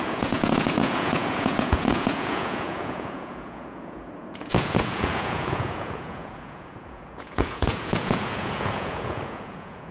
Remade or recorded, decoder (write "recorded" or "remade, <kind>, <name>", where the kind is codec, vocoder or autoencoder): remade, vocoder, Vocos